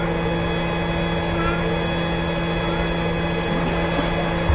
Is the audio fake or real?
real